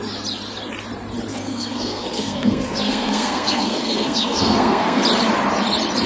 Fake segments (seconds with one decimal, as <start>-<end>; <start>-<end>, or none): 1.3-5.0